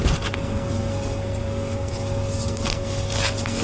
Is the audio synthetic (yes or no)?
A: yes